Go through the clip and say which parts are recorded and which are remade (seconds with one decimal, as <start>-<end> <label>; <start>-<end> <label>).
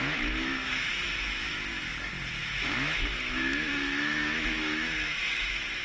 0.0-1.7 remade; 1.7-2.4 recorded; 2.4-5.8 remade